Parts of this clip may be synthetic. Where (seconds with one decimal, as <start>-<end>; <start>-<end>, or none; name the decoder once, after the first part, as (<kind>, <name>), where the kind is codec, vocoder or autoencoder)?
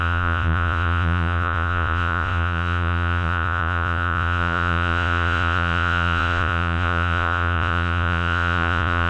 0.0-9.1 (vocoder, Vocos)